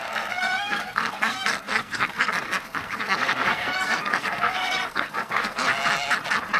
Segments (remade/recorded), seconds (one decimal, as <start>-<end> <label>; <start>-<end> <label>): 0.0-5.6 remade; 5.6-6.6 recorded